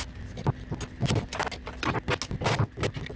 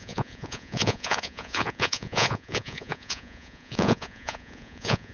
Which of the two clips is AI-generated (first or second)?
second